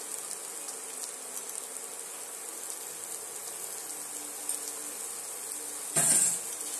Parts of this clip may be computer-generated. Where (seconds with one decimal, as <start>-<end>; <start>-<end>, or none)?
none